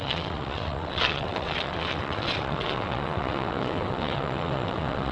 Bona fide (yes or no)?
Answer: no